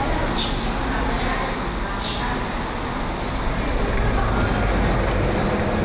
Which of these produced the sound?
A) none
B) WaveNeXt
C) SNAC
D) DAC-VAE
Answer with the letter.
A